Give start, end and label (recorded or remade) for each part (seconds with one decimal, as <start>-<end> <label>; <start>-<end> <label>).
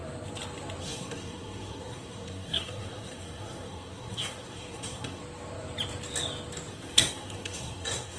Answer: 0.0-0.8 recorded; 0.8-5.2 remade; 5.2-6.7 recorded; 6.7-8.2 remade